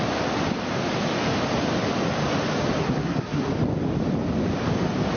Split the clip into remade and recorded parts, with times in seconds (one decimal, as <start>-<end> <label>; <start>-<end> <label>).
0.0-2.8 recorded; 2.8-3.5 remade; 3.5-5.2 recorded